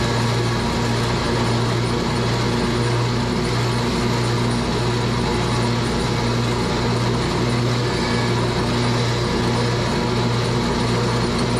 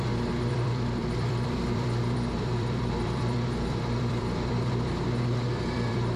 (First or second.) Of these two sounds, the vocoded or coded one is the second